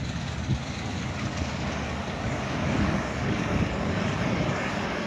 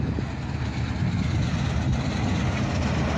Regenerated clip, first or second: first